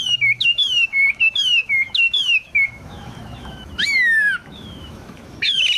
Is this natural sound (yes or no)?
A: no